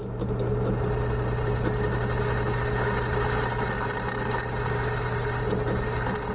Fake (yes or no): no